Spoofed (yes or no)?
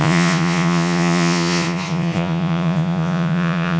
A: yes